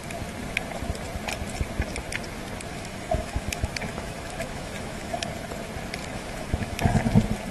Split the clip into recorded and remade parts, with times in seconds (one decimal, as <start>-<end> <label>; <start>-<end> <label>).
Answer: 0.0-2.7 recorded; 2.7-5.3 remade; 5.3-6.0 recorded; 6.0-7.0 remade; 7.0-7.5 recorded